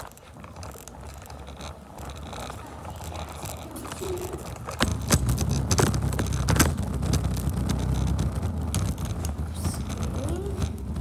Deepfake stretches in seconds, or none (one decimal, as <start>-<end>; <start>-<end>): none